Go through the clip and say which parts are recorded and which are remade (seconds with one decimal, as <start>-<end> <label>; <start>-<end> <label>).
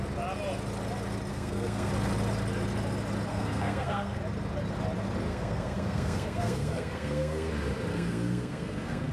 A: 0.0-1.3 recorded; 1.3-1.9 remade; 1.9-3.3 recorded; 3.3-4.2 remade; 4.2-5.3 recorded; 5.3-7.5 remade; 7.5-7.9 recorded; 7.9-9.1 remade